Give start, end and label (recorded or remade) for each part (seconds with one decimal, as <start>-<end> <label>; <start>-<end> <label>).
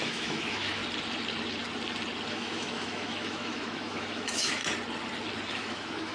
0.0-0.8 remade; 0.8-2.3 recorded; 2.3-4.6 remade; 4.6-5.5 recorded; 5.5-6.1 remade